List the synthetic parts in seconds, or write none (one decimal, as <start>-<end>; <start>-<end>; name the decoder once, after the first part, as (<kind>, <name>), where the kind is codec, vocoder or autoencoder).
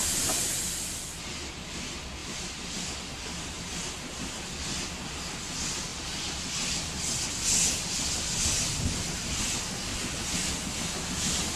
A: 2.2-3.8 (vocoder, BigVGAN v2); 5.9-7.3